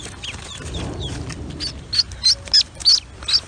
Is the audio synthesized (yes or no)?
no